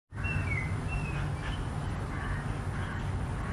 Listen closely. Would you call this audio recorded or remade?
recorded